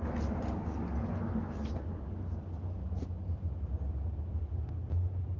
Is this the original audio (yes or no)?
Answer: yes